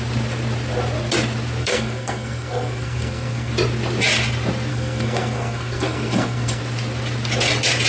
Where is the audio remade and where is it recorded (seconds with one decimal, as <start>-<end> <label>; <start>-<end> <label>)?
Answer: 0.0-1.6 recorded; 1.6-3.5 remade; 3.5-4.7 recorded; 4.7-6.6 remade; 6.6-7.9 recorded